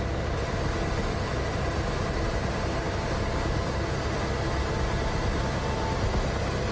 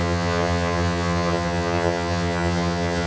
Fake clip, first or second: second